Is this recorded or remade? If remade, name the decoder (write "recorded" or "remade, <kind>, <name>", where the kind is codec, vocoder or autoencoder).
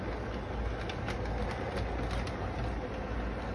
recorded